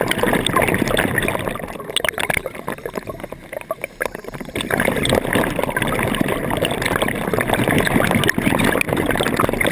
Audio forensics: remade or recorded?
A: recorded